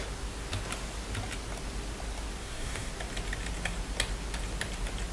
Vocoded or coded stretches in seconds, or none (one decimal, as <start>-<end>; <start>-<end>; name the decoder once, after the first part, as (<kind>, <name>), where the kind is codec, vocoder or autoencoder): 2.4-2.9 (codec, DAC)